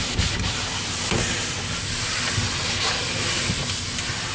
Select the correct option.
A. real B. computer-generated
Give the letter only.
A